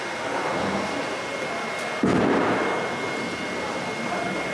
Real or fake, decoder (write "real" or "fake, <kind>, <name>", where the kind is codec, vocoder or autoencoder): real